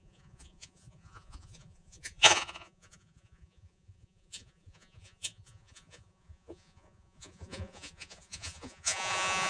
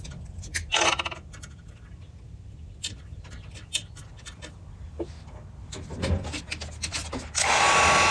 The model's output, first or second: first